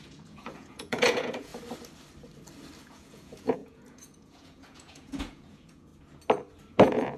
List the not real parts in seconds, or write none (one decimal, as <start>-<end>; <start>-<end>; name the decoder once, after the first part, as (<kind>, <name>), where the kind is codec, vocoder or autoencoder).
0.0-1.5 (vocoder, Vocos); 2.8-5.9; 6.7-7.2